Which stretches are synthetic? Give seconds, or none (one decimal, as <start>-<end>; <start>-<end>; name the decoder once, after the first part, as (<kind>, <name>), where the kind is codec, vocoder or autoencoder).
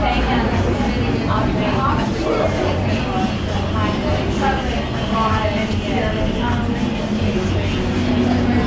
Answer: none